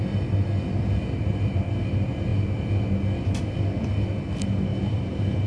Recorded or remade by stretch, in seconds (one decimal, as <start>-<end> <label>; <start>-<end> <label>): 0.0-4.7 recorded; 4.7-5.5 remade